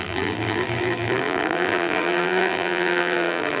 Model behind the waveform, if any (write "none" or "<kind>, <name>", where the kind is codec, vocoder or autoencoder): vocoder, BigVGAN v2